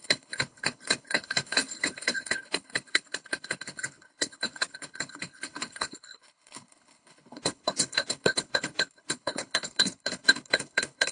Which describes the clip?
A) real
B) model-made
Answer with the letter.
B